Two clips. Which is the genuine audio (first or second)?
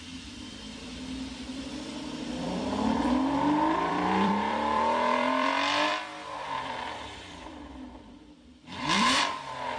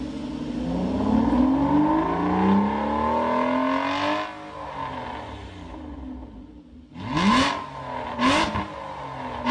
second